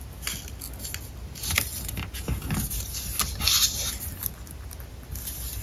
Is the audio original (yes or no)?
yes